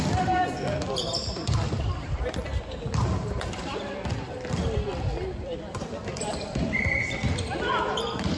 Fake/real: fake